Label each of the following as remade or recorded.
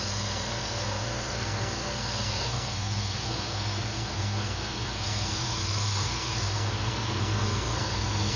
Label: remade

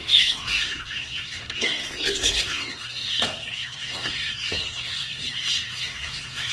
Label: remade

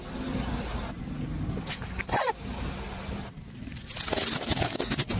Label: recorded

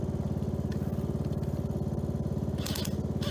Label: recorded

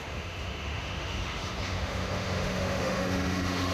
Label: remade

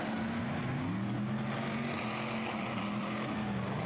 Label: recorded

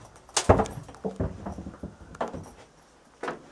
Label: recorded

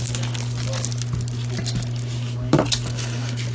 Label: recorded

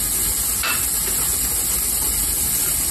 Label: recorded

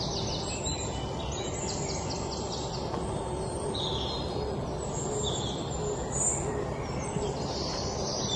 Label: recorded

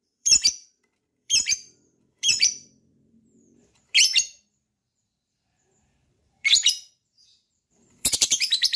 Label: remade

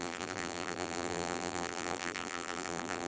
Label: remade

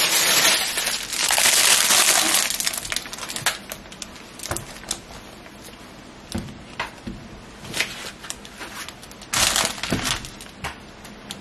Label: recorded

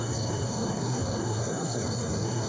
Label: remade